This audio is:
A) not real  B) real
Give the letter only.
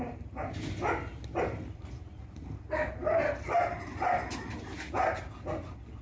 B